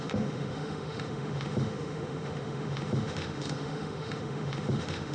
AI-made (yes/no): yes